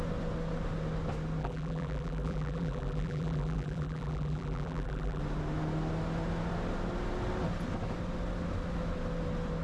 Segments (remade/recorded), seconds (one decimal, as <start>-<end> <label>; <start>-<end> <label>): 0.0-1.4 recorded; 1.4-5.2 remade; 5.2-9.6 recorded